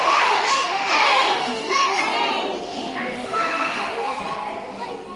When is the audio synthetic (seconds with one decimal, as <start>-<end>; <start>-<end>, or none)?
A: 0.0-2.0; 2.7-4.2